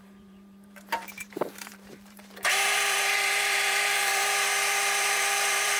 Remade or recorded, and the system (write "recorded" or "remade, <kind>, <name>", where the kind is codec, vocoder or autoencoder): remade, vocoder, BigVGAN v2